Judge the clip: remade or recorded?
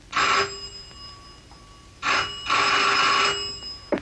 recorded